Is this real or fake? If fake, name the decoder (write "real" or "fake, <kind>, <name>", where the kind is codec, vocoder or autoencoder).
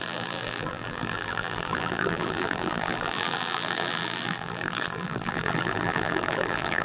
fake, vocoder, BigVGAN v2